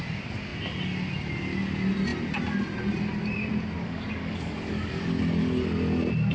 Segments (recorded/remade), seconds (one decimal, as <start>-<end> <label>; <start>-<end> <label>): 0.0-3.8 recorded; 3.8-5.0 remade; 5.0-6.3 recorded